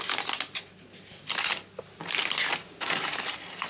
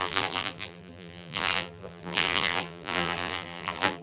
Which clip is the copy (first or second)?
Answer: second